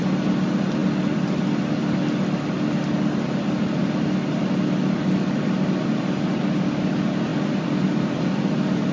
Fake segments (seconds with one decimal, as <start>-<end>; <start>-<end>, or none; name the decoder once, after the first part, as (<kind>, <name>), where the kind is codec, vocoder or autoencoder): 7.3-8.9 (vocoder, BigVGAN v2)